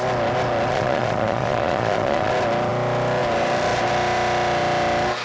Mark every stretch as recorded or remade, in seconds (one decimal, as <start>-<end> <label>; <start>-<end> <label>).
0.0-0.7 recorded; 0.7-2.3 remade; 2.3-5.2 recorded